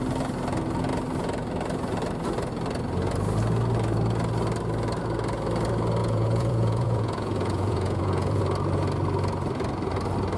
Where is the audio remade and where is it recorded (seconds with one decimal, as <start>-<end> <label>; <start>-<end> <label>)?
0.0-6.0 recorded; 6.0-8.4 remade; 8.4-10.4 recorded

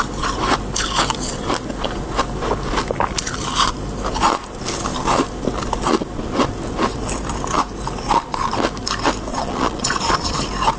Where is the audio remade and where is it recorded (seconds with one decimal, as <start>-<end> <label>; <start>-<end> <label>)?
0.0-9.3 recorded; 9.3-10.4 remade; 10.4-10.8 recorded

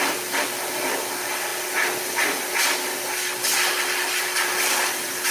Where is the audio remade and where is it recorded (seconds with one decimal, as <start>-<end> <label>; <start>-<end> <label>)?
0.0-5.3 recorded

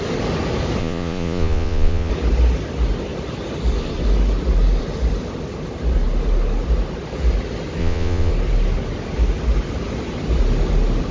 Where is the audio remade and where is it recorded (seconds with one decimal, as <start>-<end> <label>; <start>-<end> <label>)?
0.0-0.8 recorded; 0.8-2.1 remade; 2.1-7.8 recorded; 7.8-8.3 remade; 8.3-11.1 recorded

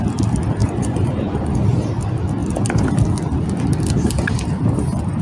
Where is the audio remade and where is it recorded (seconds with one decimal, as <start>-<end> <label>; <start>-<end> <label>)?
0.0-0.6 recorded; 0.6-1.5 remade; 1.5-5.2 recorded

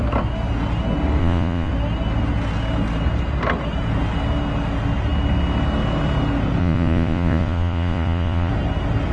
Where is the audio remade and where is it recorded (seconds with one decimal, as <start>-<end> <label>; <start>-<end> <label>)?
0.0-1.2 recorded; 1.2-1.7 remade; 1.7-6.6 recorded; 6.6-8.5 remade; 8.5-9.1 recorded

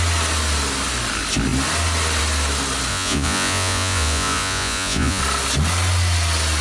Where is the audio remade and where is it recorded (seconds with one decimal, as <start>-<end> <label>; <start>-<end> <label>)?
0.0-2.9 recorded; 2.9-5.2 remade; 5.2-6.6 recorded

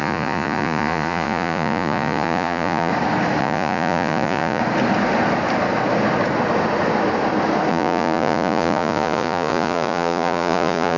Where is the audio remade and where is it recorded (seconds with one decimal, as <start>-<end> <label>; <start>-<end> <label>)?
0.0-2.9 remade; 2.9-3.4 recorded; 3.4-4.6 remade; 4.6-7.7 recorded; 7.7-11.0 remade